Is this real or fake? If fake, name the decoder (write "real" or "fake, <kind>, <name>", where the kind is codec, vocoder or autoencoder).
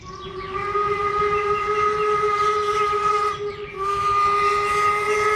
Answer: real